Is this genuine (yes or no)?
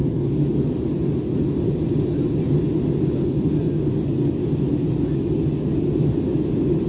yes